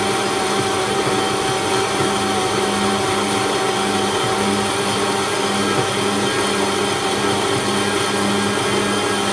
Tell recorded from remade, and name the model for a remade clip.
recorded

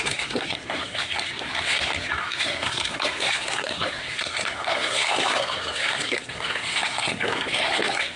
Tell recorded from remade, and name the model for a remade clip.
remade, codec, SNAC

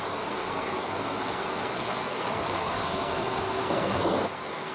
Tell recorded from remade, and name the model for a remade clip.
remade, codec, SNAC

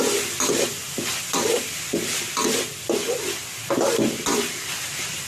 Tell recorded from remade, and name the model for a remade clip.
recorded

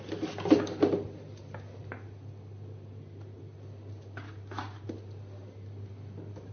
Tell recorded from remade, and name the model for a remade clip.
recorded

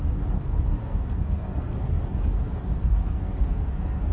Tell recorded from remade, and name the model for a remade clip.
remade, codec, SNAC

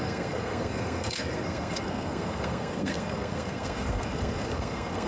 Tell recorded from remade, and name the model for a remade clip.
remade, codec, SNAC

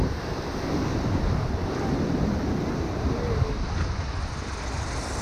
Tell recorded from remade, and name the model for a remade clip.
recorded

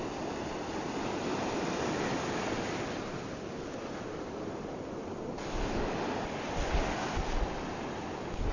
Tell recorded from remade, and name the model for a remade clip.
recorded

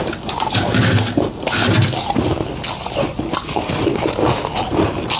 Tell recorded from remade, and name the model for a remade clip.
recorded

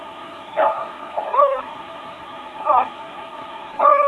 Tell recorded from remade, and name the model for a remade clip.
remade, codec, SNAC